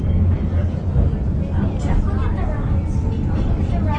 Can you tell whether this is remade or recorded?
recorded